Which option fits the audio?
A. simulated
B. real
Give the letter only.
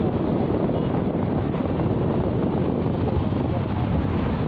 B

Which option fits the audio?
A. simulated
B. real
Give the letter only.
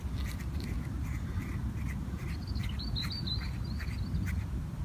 B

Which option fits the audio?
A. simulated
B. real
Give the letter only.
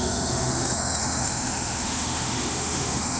A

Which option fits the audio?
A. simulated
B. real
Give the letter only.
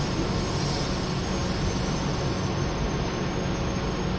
B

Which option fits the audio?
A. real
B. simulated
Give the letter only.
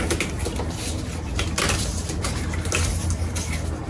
A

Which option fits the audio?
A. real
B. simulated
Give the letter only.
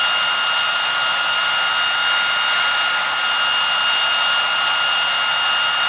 A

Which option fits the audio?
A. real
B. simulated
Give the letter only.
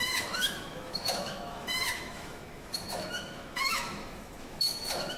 B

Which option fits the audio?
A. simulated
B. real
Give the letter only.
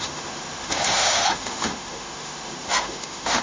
A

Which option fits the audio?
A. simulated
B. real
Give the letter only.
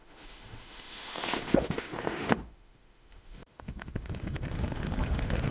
A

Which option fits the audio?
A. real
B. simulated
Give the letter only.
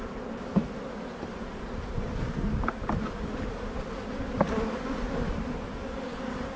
A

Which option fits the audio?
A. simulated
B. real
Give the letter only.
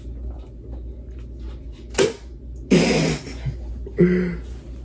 B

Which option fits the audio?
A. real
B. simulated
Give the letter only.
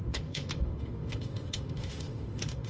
B